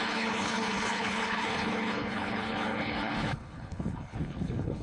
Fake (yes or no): yes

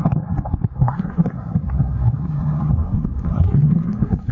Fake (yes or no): yes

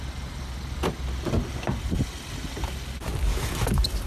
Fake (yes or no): no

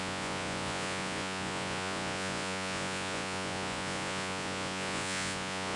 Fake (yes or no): yes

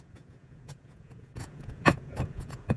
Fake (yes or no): yes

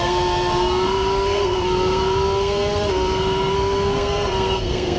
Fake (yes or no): yes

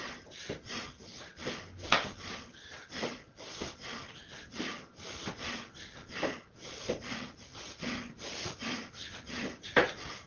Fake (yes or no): no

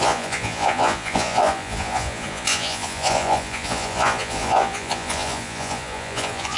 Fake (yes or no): yes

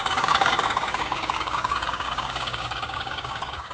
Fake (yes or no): yes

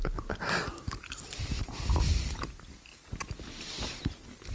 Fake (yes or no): no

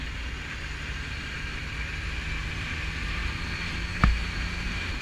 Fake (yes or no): no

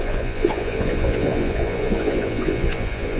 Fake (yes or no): yes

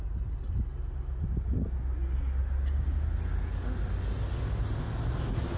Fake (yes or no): no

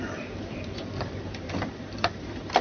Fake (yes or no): yes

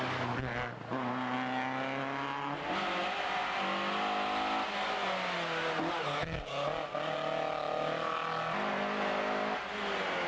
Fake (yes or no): no